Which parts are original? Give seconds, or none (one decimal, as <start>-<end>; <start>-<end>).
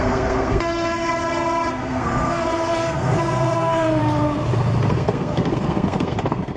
1.1-1.7; 4.0-4.9